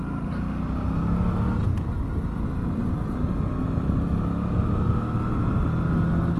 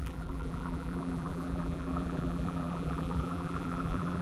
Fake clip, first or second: second